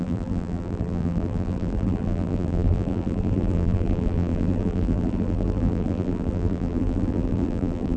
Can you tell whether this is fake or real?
fake